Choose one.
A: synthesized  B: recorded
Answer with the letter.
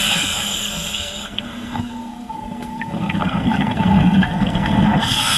A